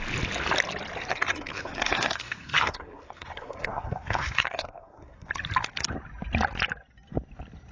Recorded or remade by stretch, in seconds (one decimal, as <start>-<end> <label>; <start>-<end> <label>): 0.0-1.1 recorded; 1.1-5.3 remade; 5.3-7.7 recorded